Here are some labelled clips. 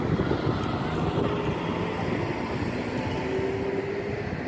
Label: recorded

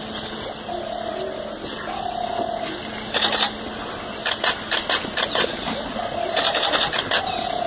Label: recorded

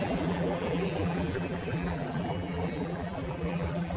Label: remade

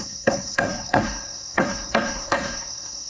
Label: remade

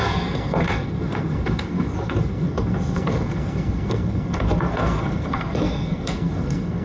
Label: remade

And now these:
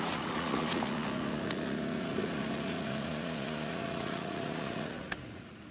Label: remade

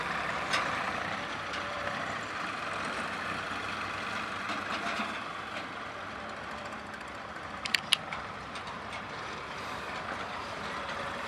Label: remade